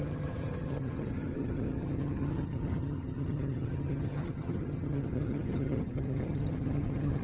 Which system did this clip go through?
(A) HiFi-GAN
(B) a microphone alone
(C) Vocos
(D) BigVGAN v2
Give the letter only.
A